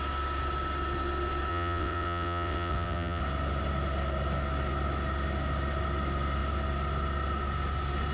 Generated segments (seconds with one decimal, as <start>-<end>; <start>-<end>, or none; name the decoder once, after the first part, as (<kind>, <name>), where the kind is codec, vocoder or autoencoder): 1.5-3.2 (vocoder, WaveNeXt)